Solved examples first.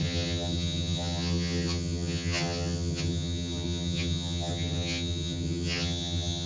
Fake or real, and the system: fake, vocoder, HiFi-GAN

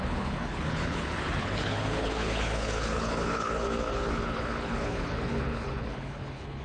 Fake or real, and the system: fake, codec, HILCodec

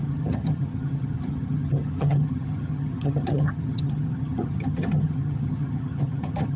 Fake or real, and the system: fake, vocoder, HiFi-GAN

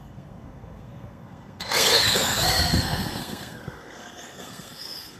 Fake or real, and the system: fake, codec, SNAC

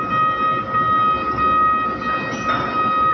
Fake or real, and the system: real